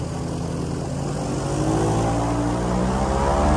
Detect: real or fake real